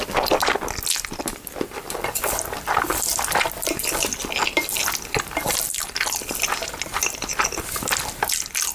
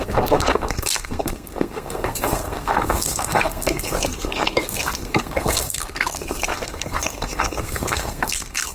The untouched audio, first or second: first